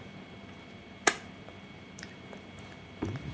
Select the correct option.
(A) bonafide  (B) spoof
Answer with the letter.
B